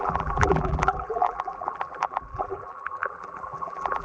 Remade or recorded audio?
remade